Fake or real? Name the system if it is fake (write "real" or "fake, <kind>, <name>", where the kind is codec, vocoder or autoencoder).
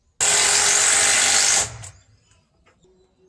real